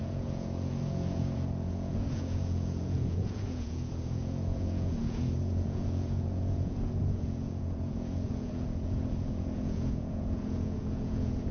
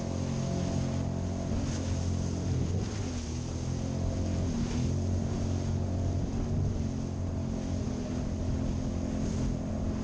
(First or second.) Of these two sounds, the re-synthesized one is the first